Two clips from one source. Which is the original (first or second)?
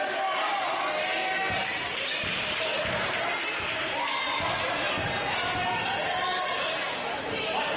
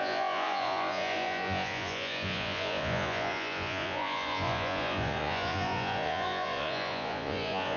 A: first